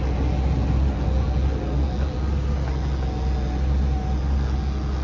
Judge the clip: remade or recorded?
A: recorded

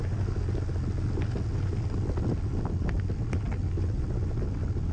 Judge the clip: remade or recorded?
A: recorded